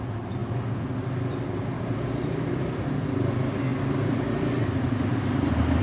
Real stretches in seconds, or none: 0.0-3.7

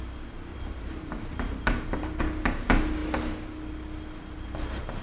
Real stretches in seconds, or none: 0.0-0.5; 2.2-5.0

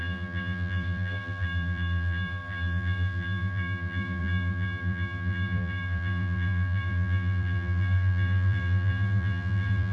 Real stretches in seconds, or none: none

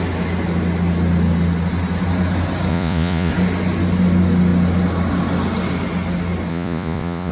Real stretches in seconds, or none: 0.0-2.7; 3.3-6.5